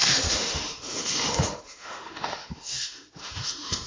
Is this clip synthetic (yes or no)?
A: yes